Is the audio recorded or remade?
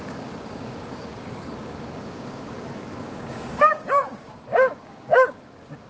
remade